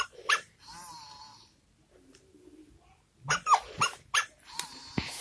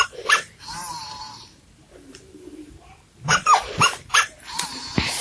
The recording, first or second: first